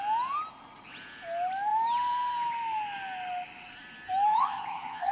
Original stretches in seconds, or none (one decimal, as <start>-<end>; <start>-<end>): 0.0-4.3